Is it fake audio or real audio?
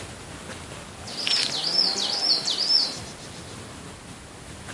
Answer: real